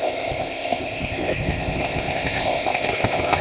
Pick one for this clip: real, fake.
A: fake